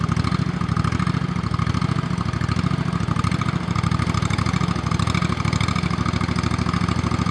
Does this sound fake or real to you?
real